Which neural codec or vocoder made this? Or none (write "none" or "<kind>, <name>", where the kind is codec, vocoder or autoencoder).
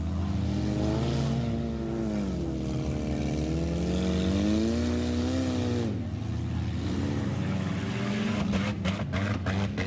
none